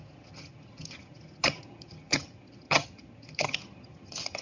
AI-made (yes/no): yes